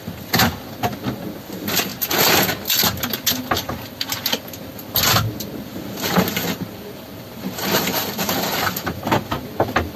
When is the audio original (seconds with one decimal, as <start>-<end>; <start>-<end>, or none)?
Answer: 0.0-5.7; 9.5-10.0